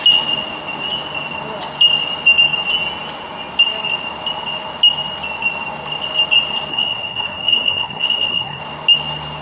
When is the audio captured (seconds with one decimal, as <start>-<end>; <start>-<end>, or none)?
0.0-6.7; 8.6-9.4